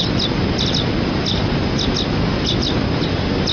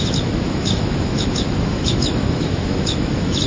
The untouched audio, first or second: first